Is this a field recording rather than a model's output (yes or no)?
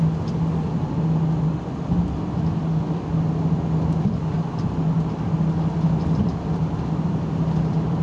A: yes